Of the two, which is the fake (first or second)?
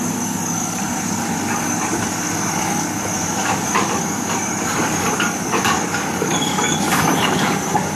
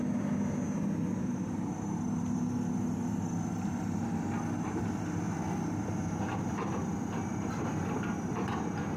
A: first